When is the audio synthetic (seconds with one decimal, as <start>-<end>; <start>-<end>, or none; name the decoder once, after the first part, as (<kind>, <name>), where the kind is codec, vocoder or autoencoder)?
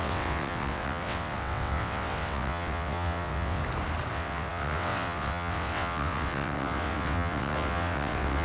0.0-3.6 (vocoder, WaveNeXt); 4.1-8.4